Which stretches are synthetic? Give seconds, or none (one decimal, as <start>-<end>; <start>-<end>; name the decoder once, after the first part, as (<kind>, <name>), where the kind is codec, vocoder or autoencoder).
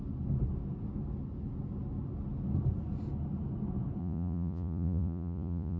4.0-5.8 (vocoder, Vocos)